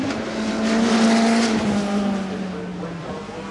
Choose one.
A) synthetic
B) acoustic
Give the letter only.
B